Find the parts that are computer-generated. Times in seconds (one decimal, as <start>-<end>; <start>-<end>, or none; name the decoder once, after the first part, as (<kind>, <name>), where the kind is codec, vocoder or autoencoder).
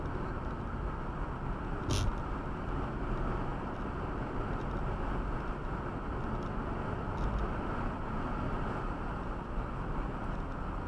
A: none